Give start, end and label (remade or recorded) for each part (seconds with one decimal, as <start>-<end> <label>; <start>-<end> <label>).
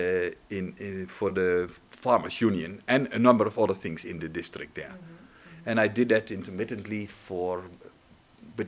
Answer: 0.0-8.7 recorded